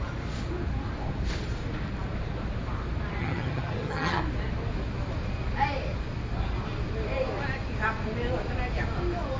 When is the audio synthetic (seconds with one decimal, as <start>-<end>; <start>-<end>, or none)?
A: 3.2-4.2